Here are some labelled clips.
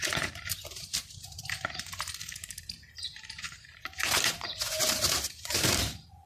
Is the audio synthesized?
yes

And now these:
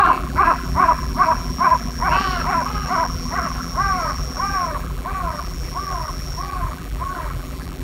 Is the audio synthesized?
yes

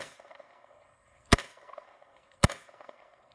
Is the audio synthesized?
yes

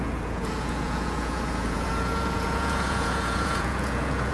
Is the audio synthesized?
yes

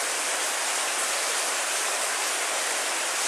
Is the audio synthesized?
no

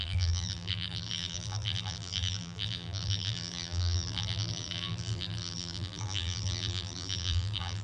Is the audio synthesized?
yes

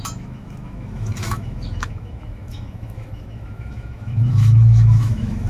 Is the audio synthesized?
yes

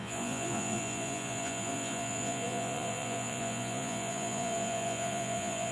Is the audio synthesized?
yes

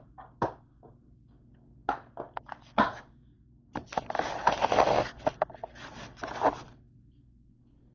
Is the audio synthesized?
no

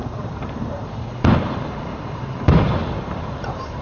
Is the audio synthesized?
yes